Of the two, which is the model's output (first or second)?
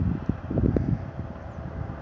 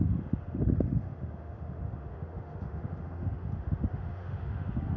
second